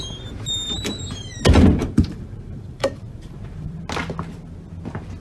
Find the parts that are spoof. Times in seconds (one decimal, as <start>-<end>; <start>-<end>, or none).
1.8-3.8